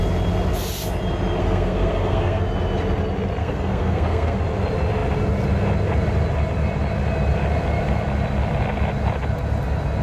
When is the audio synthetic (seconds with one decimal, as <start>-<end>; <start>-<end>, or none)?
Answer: 1.4-2.4; 3.4-4.4